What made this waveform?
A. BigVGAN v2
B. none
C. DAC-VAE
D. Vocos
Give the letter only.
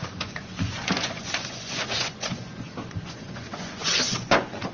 D